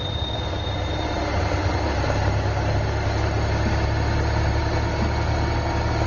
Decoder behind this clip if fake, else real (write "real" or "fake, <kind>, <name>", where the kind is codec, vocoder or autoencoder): real